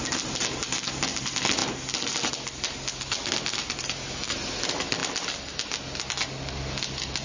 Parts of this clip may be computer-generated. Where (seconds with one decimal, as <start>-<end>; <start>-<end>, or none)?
none